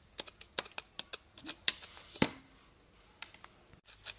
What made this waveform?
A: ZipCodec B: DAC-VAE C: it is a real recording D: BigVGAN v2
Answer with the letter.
C